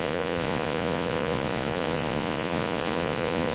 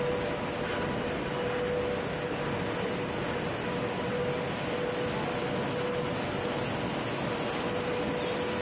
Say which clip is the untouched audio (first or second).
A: second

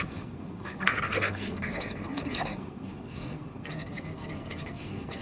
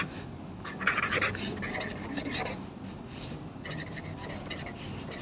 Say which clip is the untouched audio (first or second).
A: second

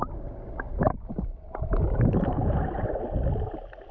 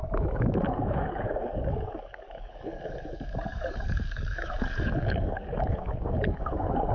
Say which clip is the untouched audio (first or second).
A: first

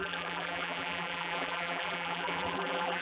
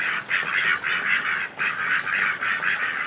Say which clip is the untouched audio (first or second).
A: second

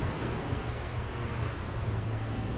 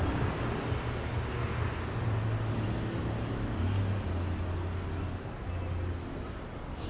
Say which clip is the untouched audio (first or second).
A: second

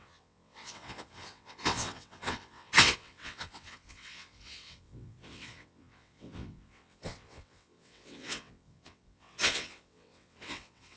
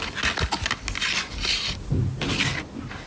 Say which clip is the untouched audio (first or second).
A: second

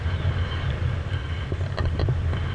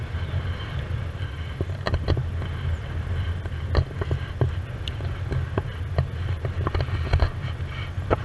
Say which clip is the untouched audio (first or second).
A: first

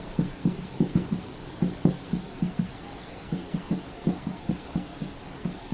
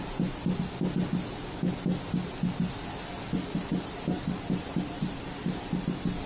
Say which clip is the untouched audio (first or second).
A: second